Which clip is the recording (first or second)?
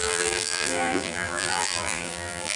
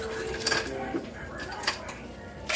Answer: second